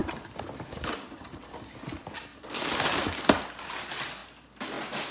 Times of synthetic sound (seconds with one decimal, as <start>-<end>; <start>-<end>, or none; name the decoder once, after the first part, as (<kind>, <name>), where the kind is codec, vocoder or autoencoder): 1.2-2.3 (vocoder, BigVGAN v2); 3.6-4.2